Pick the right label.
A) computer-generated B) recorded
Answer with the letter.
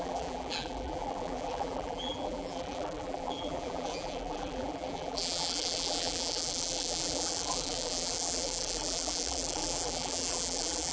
A